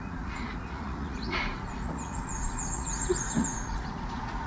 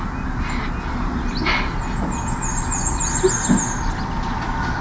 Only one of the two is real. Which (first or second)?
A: second